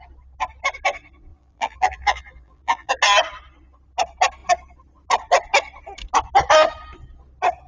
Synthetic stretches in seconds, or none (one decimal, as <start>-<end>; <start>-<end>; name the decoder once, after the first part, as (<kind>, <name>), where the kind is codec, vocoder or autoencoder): 1.3-2.9 (vocoder, BigVGAN v2)